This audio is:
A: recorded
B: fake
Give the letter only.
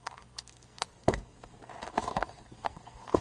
B